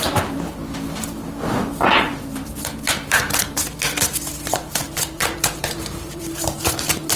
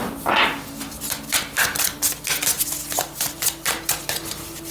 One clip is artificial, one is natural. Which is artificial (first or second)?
first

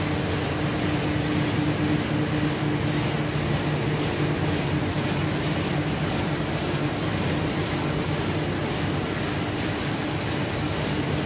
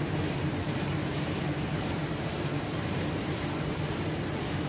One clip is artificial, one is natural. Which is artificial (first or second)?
second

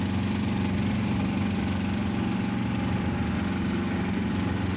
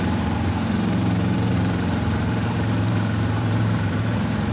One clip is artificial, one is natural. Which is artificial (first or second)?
second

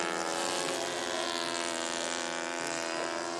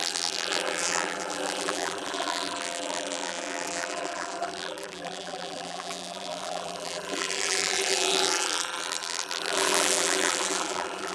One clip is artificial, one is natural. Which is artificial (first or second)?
second